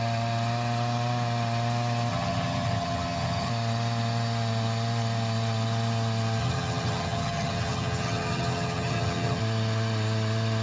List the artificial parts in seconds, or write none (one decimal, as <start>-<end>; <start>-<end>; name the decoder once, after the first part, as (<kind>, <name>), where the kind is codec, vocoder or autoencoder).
2.1-3.5 (vocoder, HiFi-GAN); 6.4-9.4